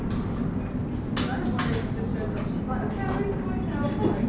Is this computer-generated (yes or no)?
no